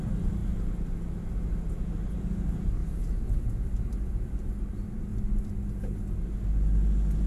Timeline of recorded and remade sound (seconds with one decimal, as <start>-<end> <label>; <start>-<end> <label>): 0.0-0.4 remade; 0.4-2.1 recorded; 2.1-2.8 remade; 2.8-3.5 recorded; 3.5-5.1 remade; 5.1-7.3 recorded